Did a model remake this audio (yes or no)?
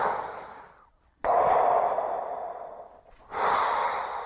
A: no